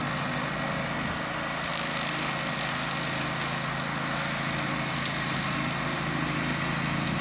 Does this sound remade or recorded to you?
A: recorded